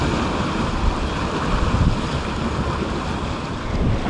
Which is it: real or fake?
real